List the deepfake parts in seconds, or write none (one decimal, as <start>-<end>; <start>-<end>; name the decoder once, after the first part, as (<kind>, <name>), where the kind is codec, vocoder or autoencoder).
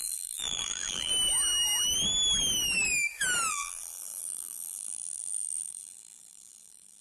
0.0-1.1 (vocoder, BigVGAN v2); 3.5-7.0